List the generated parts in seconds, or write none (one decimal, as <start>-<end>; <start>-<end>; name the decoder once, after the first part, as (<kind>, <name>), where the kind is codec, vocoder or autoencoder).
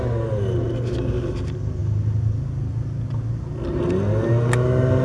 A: none